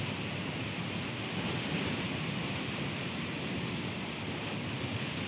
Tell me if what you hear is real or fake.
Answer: real